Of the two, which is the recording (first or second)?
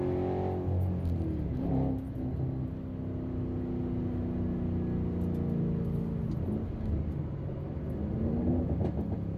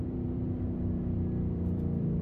first